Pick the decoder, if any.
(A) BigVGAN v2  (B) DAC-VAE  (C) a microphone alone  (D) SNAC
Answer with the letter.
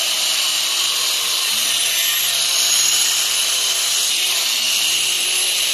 C